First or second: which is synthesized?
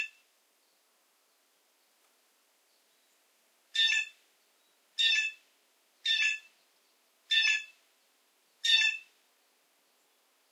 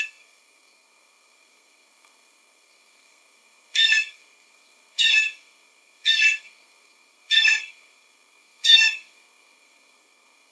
second